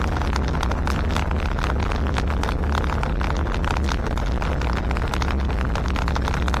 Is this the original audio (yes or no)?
yes